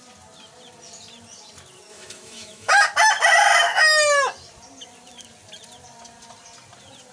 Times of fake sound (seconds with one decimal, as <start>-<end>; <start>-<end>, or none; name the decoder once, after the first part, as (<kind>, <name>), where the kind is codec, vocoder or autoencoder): 1.9-2.7 (autoencoder, DAC-VAE)